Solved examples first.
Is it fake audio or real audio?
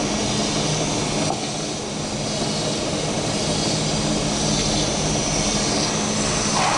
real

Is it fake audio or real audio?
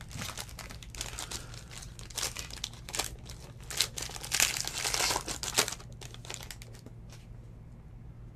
real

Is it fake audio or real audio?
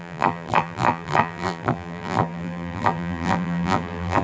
fake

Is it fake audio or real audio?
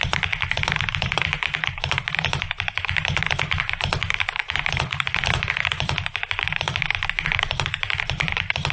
fake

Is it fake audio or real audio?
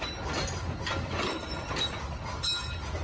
real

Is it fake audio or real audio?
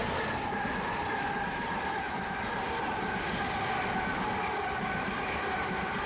real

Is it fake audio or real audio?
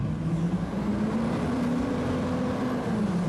real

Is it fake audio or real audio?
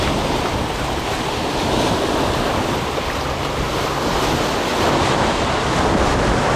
real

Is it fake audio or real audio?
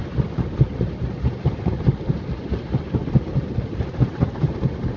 fake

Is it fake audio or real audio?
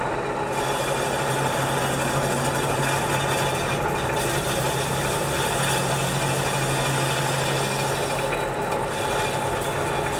real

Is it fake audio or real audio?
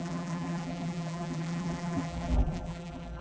fake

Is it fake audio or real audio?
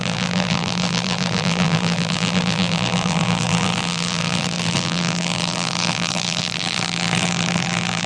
fake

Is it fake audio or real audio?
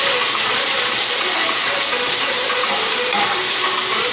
fake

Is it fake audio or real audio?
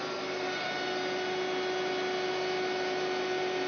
real